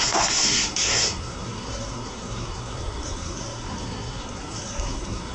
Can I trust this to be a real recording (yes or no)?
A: no